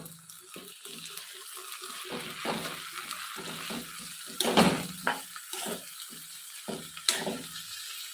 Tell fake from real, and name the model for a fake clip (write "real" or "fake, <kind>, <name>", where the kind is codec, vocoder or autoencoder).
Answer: real